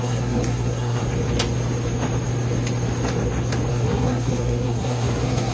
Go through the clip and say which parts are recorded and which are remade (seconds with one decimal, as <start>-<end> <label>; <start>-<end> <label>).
0.0-1.0 remade; 1.0-3.7 recorded; 3.7-5.5 remade